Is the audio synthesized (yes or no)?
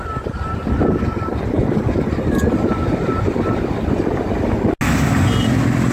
no